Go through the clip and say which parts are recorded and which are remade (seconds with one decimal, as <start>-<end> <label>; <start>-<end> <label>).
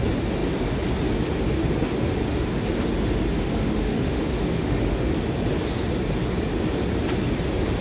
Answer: 0.0-3.3 recorded; 3.3-5.1 remade; 5.1-7.8 recorded